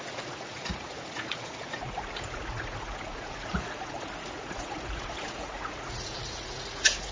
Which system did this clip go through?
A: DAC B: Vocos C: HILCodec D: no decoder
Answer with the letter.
B